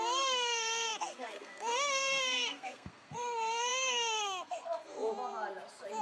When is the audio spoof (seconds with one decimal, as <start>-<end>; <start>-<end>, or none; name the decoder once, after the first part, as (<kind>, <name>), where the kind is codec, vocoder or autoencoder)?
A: 0.0-5.1 (codec, SNAC)